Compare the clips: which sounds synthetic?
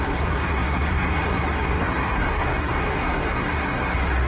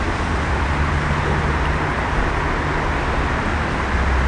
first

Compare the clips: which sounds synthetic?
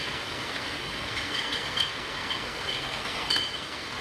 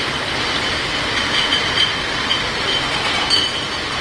first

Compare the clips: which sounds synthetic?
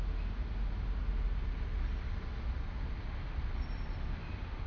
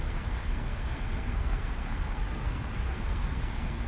second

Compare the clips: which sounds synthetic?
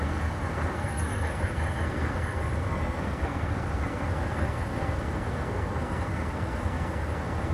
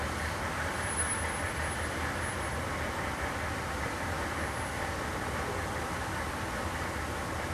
first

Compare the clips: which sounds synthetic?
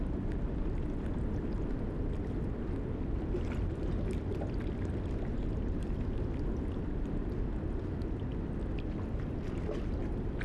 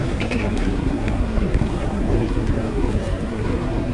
second